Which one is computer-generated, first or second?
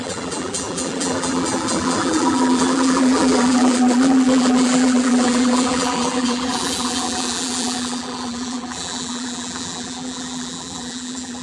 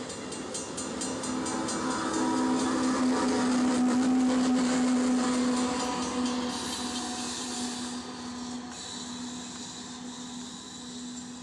first